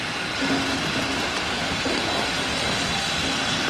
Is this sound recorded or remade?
recorded